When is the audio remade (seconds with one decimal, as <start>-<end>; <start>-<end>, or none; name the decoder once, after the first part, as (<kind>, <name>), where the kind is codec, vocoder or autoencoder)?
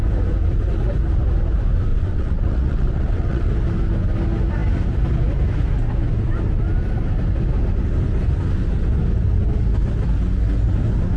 1.9-3.5 (vocoder, WaveNeXt)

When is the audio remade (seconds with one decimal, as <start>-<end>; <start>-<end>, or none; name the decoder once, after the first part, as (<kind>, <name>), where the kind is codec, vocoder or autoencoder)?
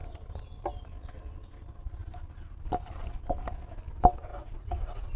4.3-5.2 (vocoder, Vocos)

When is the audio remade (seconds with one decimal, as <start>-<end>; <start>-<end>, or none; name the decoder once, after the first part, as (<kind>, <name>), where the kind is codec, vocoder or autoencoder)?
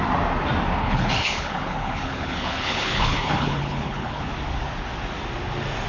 0.8-4.3 (codec, HILCodec)